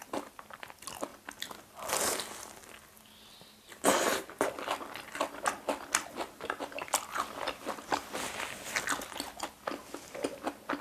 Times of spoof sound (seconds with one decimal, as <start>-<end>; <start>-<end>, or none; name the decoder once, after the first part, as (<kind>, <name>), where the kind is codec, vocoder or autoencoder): none